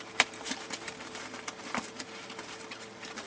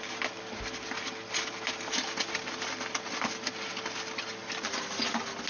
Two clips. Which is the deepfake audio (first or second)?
first